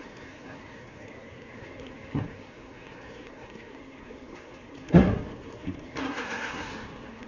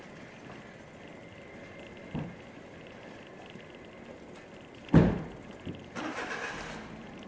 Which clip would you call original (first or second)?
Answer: second